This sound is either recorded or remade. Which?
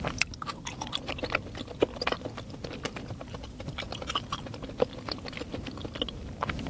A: recorded